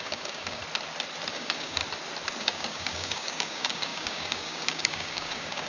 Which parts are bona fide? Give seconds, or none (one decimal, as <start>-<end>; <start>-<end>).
0.6-1.3; 1.8-2.4